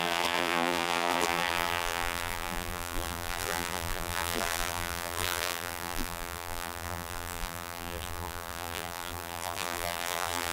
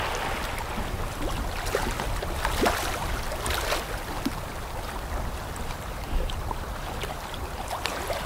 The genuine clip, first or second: second